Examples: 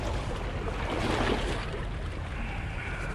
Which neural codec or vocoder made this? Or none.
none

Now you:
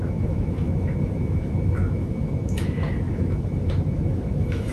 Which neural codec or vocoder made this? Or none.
autoencoder, DAC-VAE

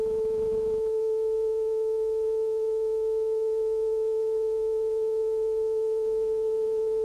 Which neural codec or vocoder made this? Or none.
autoencoder, DAC-VAE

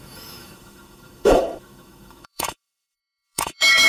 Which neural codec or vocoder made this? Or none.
autoencoder, DAC-VAE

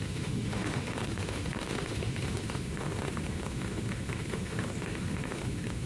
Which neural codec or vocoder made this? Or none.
autoencoder, DAC-VAE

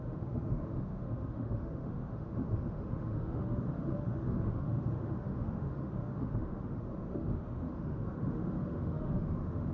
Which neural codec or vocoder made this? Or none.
autoencoder, DAC-VAE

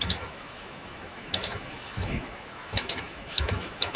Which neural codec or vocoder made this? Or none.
autoencoder, DAC-VAE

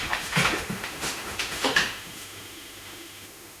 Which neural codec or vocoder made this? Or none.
autoencoder, DAC-VAE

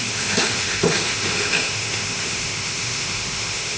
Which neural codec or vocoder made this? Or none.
autoencoder, DAC-VAE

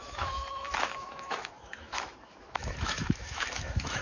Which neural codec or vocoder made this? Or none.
autoencoder, DAC-VAE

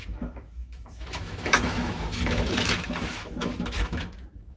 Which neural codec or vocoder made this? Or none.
autoencoder, DAC-VAE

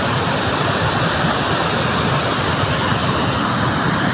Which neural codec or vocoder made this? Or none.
none